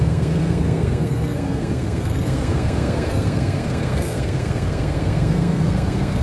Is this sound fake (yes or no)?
yes